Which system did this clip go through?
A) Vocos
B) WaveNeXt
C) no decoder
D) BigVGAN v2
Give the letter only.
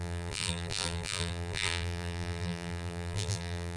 D